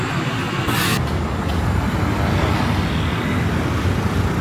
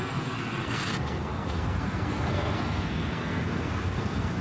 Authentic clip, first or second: first